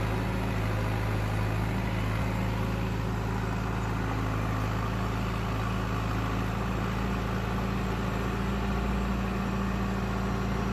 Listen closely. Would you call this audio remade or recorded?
recorded